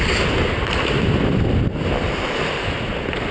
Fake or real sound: real